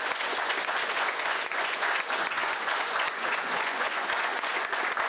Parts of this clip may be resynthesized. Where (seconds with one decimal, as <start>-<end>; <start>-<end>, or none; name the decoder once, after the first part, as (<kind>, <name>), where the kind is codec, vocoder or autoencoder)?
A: 0.0-5.1 (vocoder, Vocos)